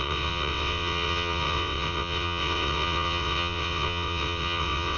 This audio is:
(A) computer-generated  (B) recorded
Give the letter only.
A